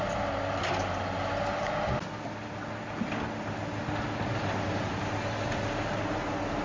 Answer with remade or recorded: recorded